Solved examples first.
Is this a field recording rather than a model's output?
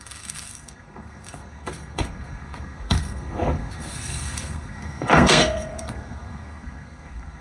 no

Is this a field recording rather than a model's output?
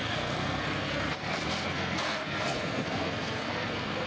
no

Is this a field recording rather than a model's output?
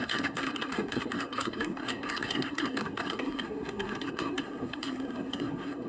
no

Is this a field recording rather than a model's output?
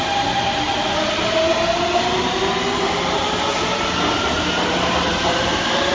yes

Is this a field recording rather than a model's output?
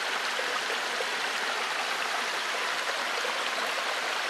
yes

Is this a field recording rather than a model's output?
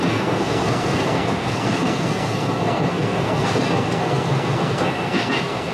no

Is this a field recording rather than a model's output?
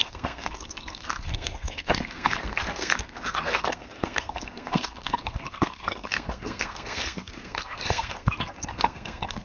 no